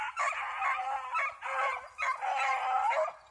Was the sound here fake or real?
real